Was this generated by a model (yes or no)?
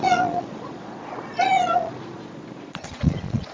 yes